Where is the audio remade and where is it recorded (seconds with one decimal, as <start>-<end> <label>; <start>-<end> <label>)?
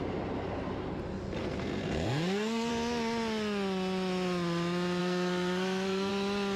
0.0-1.4 recorded; 1.4-2.7 remade; 2.7-5.0 recorded; 5.0-6.1 remade; 6.1-6.6 recorded